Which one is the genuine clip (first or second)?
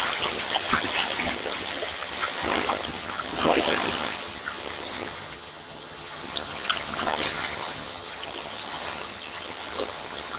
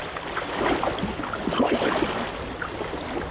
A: second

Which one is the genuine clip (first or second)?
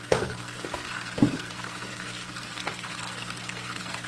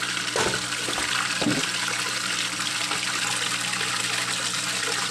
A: second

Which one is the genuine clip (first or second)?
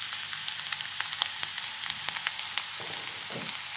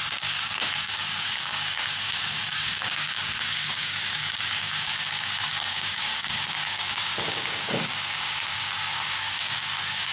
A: first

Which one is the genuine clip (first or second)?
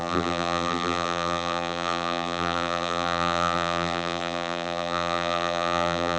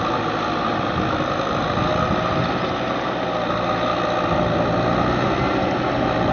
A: second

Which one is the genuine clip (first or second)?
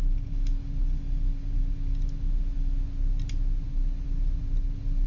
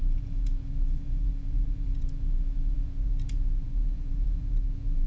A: first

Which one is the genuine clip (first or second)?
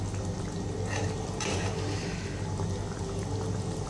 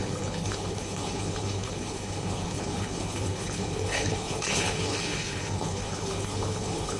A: first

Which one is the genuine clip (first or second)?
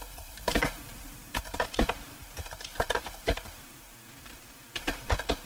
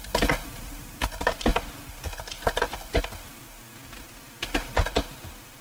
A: second